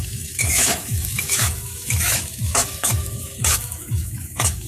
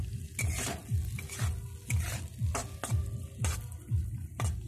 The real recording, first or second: second